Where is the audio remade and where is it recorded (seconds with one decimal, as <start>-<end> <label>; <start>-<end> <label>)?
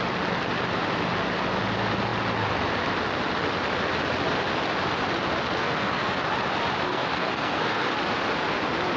0.0-5.6 recorded; 5.6-6.3 remade; 6.3-6.9 recorded; 6.9-7.9 remade; 7.9-9.0 recorded